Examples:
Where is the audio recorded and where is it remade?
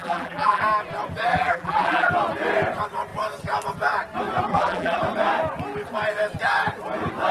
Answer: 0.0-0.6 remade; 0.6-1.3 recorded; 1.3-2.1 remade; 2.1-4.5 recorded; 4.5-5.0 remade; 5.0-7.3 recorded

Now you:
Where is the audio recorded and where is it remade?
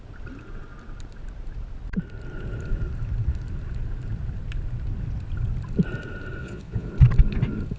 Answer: 0.0-6.4 recorded; 6.4-6.9 remade; 6.9-7.8 recorded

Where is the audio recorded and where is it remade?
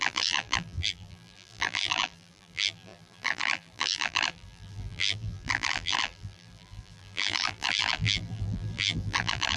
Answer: 0.0-9.6 remade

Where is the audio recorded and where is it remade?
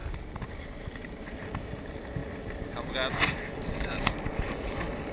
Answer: 0.0-5.1 recorded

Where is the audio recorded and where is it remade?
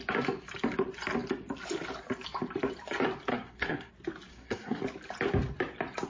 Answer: 0.0-3.3 recorded; 3.3-3.9 remade; 3.9-4.3 recorded; 4.3-4.8 remade; 4.8-6.1 recorded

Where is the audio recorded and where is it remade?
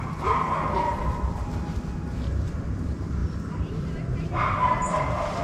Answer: 0.0-5.4 recorded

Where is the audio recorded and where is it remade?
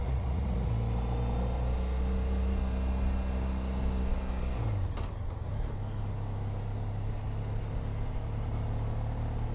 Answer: 0.0-0.7 remade; 0.7-9.5 recorded